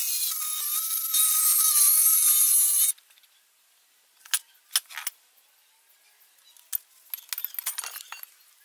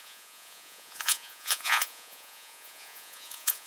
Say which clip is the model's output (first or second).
second